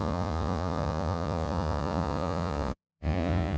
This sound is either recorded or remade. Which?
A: remade